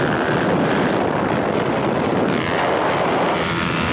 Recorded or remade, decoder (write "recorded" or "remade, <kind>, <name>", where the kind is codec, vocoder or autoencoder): recorded